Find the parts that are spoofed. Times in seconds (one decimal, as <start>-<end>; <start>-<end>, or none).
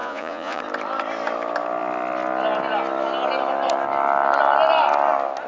0.0-0.6